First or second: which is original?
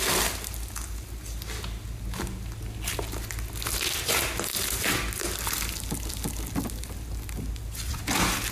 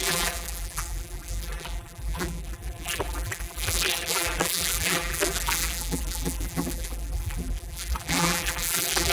first